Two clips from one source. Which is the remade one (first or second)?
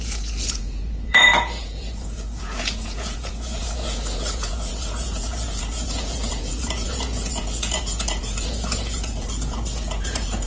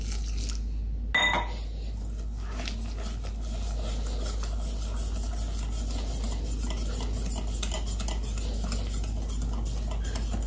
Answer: first